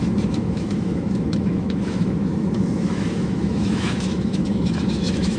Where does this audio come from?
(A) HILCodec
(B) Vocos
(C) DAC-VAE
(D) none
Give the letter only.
C